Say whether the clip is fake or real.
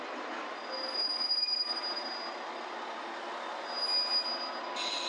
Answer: real